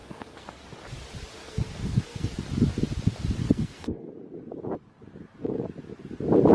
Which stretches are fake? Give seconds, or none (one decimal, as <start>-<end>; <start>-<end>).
0.0-0.6; 1.4-2.3; 3.4-4.1